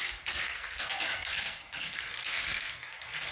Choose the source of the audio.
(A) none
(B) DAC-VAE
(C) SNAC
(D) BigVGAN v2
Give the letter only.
C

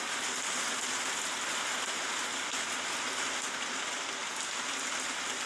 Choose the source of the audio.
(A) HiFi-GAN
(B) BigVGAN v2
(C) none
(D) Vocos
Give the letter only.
C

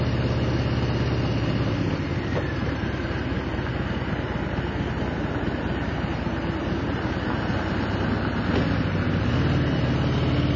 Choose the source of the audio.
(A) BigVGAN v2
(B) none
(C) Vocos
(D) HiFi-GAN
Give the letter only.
B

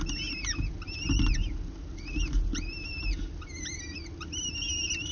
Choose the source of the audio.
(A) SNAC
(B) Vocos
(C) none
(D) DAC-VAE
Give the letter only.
C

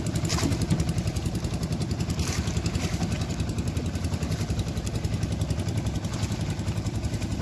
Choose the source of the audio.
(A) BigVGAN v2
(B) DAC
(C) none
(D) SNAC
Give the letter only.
C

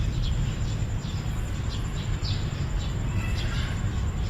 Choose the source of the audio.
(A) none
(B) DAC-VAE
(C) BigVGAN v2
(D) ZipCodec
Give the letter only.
C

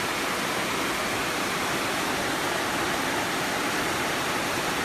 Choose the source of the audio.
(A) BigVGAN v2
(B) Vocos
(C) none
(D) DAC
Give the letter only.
A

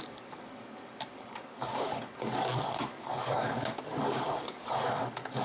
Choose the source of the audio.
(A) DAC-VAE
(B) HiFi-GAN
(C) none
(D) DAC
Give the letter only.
D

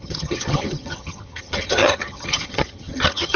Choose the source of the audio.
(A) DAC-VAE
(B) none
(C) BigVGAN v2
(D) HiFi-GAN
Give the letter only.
D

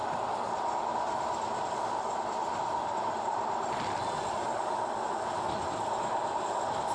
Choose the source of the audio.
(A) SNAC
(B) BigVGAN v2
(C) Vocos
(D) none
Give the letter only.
D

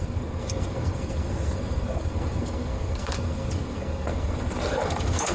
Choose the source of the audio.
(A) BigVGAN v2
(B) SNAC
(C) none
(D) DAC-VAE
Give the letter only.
B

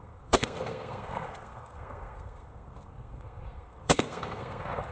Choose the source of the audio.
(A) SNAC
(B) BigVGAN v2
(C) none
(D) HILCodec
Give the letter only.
A